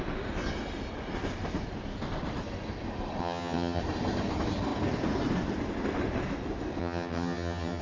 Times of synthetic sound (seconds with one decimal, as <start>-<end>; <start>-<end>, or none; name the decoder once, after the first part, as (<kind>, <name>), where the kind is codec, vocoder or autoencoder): 3.2-3.8 (vocoder, HiFi-GAN); 6.8-7.8